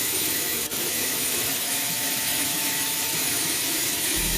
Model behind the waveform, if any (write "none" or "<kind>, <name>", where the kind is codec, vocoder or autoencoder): autoencoder, DAC-VAE